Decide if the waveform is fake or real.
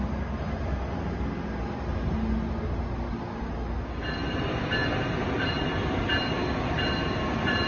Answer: real